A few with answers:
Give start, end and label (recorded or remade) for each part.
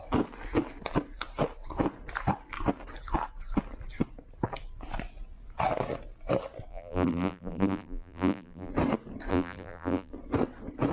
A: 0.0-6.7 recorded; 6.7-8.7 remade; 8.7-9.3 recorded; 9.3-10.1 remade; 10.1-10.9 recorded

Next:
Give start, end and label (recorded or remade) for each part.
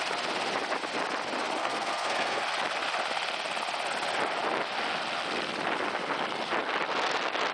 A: 0.0-1.6 recorded; 1.6-2.4 remade; 2.4-7.5 recorded